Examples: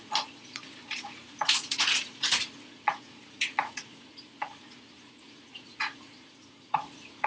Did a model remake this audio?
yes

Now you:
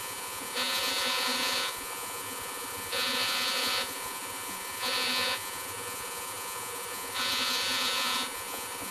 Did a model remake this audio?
yes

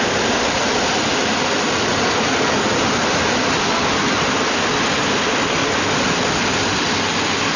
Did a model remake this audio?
no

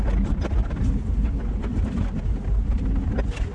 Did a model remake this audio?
no